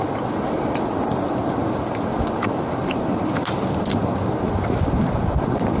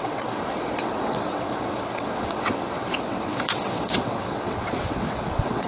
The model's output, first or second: second